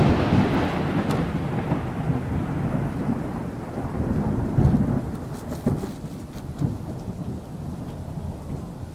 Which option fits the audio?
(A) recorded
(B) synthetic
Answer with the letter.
A